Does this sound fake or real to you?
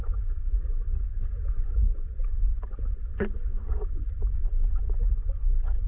fake